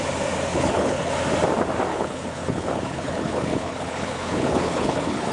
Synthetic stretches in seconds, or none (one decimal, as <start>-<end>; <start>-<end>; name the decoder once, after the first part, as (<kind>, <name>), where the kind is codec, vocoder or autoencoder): 0.5-1.1 (codec, HILCodec); 1.9-5.3